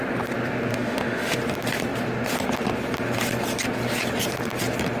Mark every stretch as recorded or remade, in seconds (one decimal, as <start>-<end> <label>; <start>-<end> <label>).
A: 0.0-0.7 recorded; 0.7-1.4 remade; 1.4-5.0 recorded